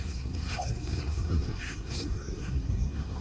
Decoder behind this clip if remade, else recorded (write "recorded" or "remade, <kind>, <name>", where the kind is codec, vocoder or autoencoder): remade, codec, SNAC